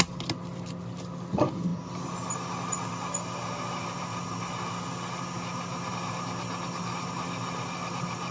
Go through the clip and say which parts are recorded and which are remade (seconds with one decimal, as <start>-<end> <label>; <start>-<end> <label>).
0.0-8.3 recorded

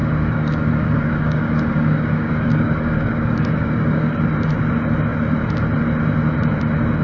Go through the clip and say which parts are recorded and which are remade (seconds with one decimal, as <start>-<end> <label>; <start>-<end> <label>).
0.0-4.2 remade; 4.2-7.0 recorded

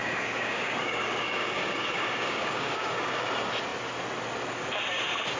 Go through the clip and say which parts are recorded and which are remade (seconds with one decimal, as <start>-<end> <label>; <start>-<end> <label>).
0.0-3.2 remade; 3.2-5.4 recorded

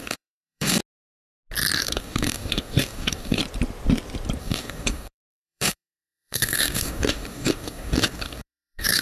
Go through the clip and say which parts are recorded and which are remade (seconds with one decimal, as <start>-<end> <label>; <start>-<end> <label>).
0.0-0.8 remade; 0.8-1.8 recorded; 1.8-3.4 remade; 3.4-4.4 recorded; 4.4-9.0 remade

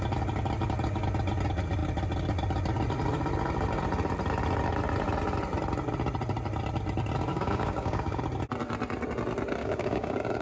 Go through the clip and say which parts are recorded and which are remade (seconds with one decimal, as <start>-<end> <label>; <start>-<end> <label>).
0.0-7.3 recorded; 7.3-8.2 remade; 8.2-9.6 recorded; 9.6-10.4 remade